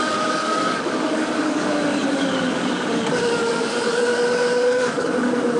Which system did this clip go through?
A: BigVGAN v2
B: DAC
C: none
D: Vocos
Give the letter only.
B